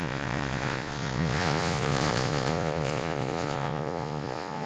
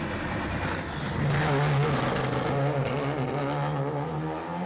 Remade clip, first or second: first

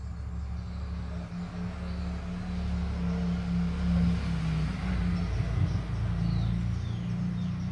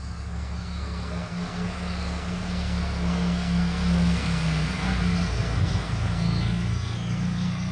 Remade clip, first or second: second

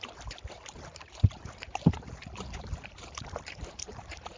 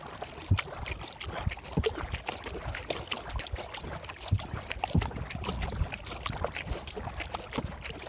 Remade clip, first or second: first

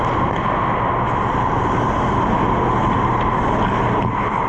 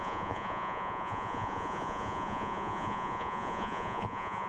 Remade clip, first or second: second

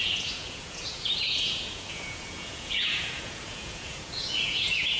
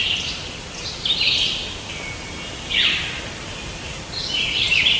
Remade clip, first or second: first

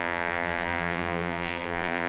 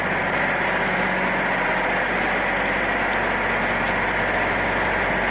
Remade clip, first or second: first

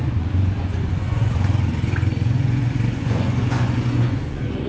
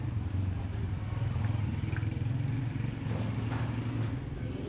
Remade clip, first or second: first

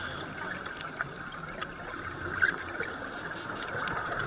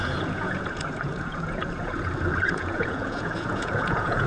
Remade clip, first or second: second